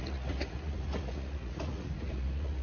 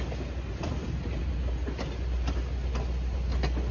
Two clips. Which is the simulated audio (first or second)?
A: first